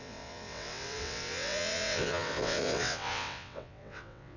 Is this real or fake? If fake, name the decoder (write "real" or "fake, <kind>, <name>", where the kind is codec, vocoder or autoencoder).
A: fake, vocoder, WaveNeXt